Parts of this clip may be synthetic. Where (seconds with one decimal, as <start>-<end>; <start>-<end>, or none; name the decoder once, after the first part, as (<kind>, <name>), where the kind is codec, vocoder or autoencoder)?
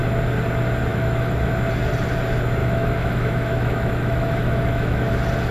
0.9-1.5 (autoencoder, DAC-VAE); 2.6-5.1